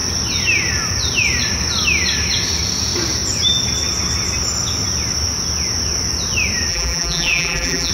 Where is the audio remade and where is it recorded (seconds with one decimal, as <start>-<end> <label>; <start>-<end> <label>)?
0.0-6.7 recorded; 6.7-7.9 remade

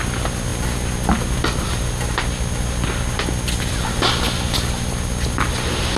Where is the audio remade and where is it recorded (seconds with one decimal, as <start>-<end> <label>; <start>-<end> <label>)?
0.0-6.0 recorded